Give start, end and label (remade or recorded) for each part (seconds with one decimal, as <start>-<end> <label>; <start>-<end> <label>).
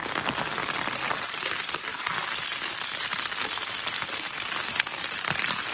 0.0-5.7 recorded